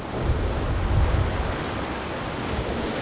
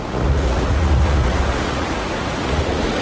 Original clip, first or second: first